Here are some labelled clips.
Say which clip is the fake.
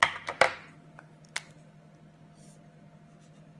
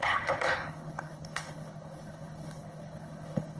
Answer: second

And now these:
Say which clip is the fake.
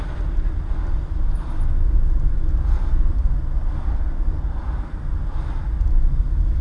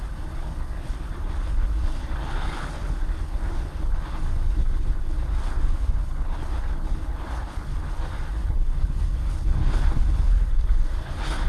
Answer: second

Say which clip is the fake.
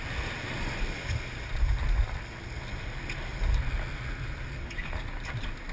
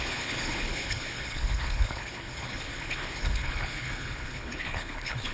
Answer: second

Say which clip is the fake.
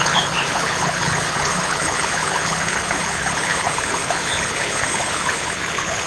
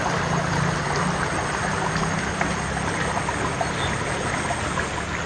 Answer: first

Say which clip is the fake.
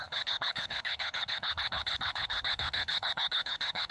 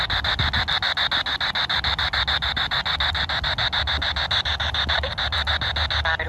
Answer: first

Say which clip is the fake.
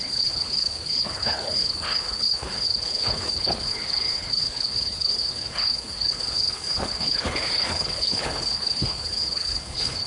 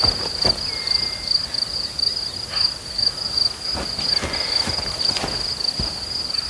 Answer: first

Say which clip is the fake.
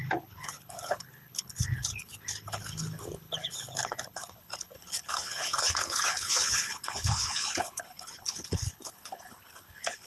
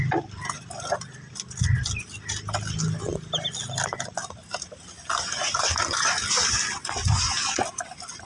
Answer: first